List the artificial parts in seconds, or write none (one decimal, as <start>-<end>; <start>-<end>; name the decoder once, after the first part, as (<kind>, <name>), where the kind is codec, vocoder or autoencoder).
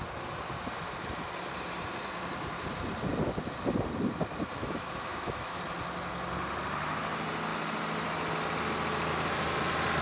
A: 4.6-5.6 (autoencoder, DAC-VAE)